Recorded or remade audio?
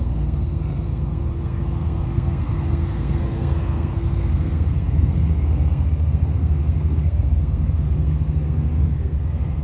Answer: remade